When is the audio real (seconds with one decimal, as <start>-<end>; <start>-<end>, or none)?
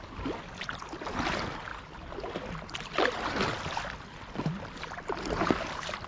0.0-6.1